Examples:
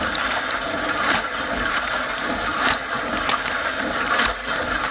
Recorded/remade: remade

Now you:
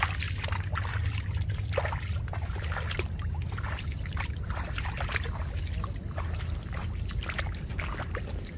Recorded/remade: recorded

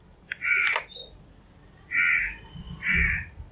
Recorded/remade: recorded